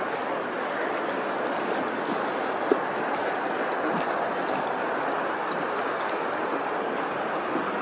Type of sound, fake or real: real